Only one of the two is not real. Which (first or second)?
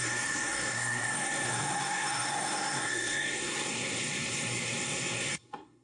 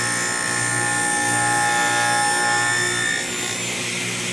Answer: first